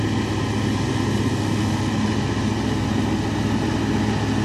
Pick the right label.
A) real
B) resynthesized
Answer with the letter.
A